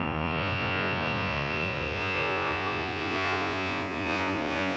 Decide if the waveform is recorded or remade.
remade